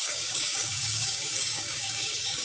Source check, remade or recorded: remade